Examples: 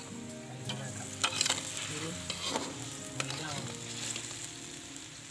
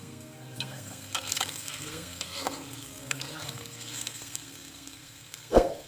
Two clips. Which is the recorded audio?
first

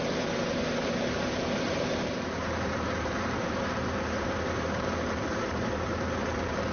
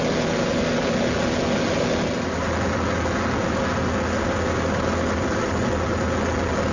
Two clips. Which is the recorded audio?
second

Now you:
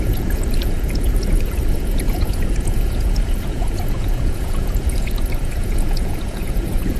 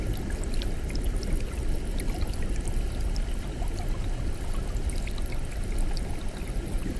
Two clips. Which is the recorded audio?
second